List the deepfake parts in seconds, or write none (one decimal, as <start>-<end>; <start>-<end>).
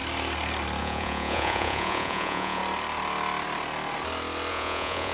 0.8-2.6; 4.5-5.1